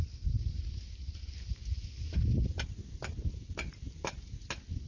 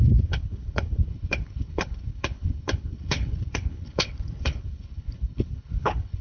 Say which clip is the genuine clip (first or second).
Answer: first